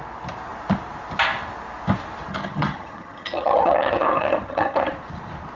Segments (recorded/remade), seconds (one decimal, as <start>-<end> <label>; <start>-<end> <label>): 0.0-2.3 recorded; 2.3-4.9 remade; 4.9-5.6 recorded